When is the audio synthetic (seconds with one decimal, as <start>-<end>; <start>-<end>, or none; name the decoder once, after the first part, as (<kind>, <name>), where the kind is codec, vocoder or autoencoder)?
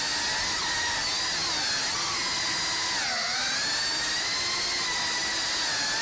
none